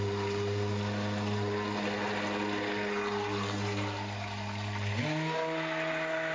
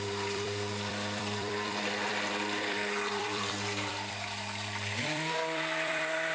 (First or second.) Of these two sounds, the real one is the first